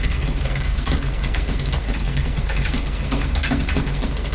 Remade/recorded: remade